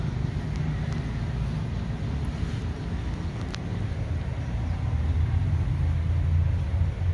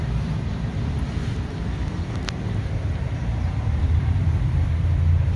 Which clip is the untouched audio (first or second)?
first